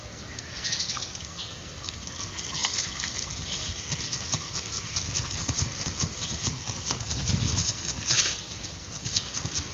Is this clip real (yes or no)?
no